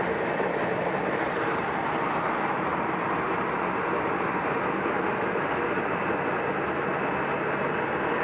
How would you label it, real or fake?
real